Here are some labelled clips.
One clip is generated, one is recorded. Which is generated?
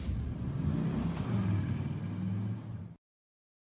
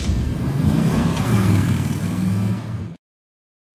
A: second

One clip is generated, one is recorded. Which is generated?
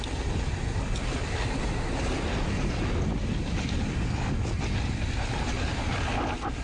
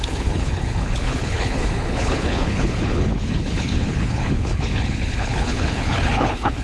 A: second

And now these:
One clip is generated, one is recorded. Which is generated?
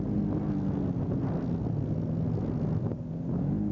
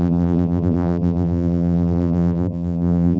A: second